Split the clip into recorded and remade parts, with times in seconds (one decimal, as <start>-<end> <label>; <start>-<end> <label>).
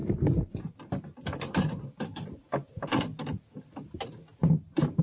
0.0-0.6 recorded; 0.6-3.1 remade; 3.1-4.4 recorded; 4.4-5.0 remade